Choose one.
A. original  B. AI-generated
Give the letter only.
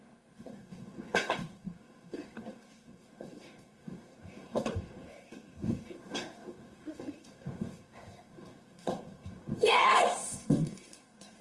B